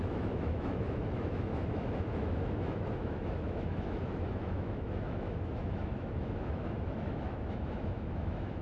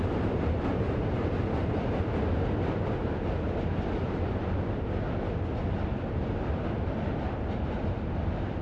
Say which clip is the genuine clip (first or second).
second